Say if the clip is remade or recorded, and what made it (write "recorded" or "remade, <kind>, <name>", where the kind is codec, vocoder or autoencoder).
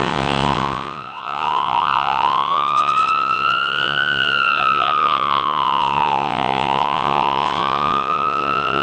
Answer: remade, vocoder, WaveNeXt